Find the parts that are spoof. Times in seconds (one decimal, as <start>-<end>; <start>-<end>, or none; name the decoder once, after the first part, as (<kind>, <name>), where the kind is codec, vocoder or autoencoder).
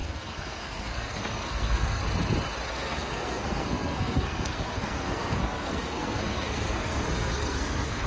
0.0-2.0 (codec, SNAC); 2.7-8.1